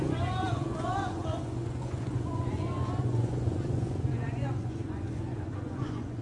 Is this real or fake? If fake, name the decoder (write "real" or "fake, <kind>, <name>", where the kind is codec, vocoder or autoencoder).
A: fake, vocoder, Vocos